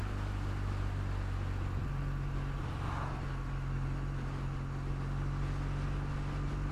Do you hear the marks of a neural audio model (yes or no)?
no